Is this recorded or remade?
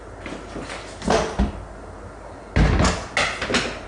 recorded